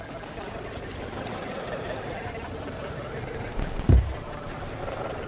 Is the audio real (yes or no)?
yes